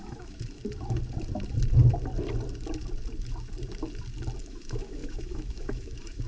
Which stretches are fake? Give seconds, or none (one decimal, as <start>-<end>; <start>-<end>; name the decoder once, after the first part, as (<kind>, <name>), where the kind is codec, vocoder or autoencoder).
0.0-0.6 (autoencoder, DAC-VAE); 4.4-6.3